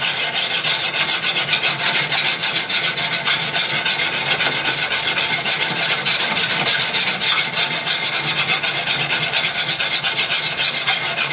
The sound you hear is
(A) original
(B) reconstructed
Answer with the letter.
A